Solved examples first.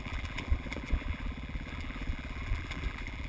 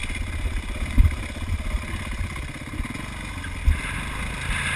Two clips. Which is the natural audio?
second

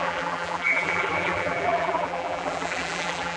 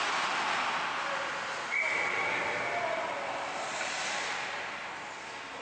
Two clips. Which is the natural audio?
second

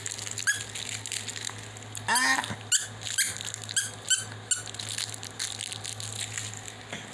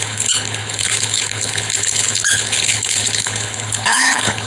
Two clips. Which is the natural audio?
first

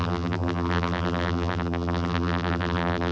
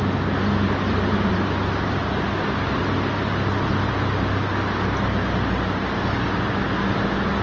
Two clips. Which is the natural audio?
second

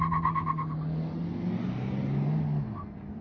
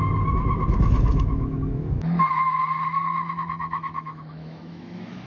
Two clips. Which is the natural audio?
first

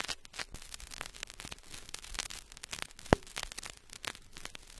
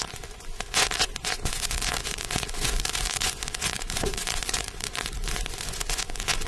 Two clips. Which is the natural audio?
first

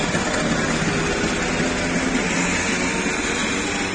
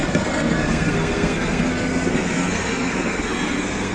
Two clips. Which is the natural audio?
first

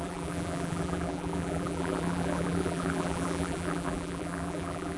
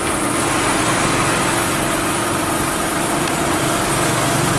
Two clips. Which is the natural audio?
second